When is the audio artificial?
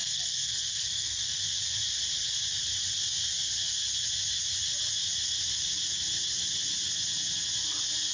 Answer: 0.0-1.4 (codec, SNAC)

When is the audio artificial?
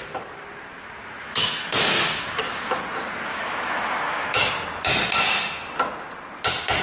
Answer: 1.2-2.8 (autoencoder, DAC-VAE); 3.3-4.5